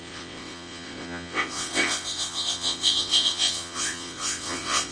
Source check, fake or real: fake